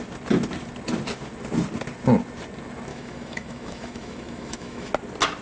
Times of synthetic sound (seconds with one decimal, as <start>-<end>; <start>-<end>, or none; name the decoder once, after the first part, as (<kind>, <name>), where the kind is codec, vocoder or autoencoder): 2.9-4.9 (autoencoder, DAC-VAE)